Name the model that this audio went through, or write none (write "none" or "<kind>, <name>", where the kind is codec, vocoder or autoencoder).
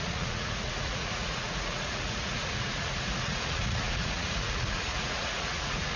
vocoder, Vocos